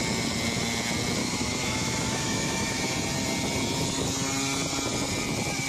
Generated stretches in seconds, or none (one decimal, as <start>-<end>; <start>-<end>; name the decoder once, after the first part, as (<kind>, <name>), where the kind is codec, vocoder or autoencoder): 1.2-2.9 (autoencoder, DAC-VAE)